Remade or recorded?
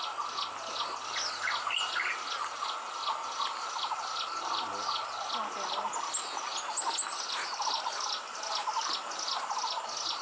recorded